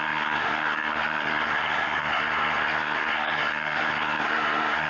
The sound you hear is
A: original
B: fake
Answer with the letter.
B